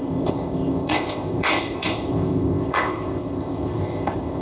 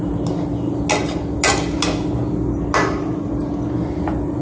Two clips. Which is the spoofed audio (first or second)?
first